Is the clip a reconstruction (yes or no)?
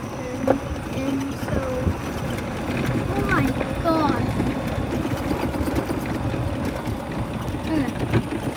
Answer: no